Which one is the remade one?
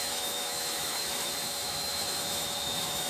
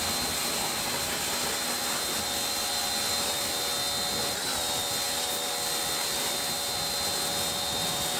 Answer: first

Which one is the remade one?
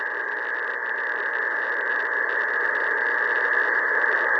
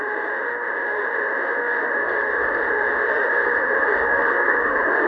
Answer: second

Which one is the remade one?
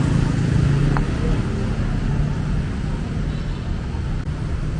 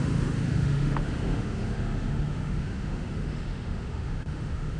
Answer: second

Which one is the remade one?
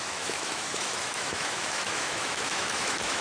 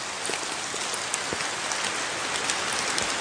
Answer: first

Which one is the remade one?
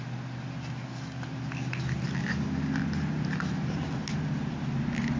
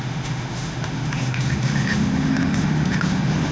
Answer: second